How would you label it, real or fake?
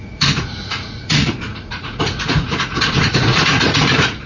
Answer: fake